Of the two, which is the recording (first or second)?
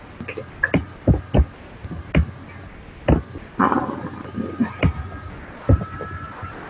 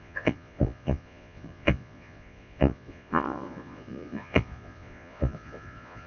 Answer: first